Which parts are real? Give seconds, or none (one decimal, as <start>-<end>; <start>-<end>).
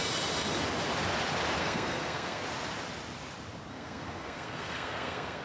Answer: 0.0-1.6; 2.4-3.7